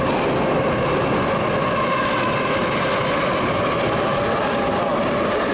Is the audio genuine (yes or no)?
yes